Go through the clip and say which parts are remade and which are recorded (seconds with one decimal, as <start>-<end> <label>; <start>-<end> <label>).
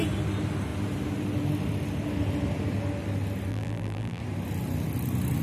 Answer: 0.0-3.5 recorded; 3.5-4.2 remade; 4.2-5.4 recorded